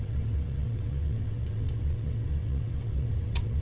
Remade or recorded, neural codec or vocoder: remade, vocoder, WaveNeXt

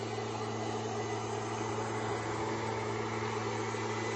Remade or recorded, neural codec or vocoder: recorded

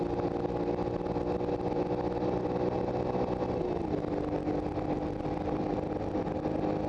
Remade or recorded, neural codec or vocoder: recorded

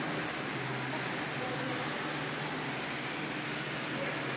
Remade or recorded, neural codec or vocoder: recorded